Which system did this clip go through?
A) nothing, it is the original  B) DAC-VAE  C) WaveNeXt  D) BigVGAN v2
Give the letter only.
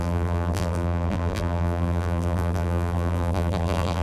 D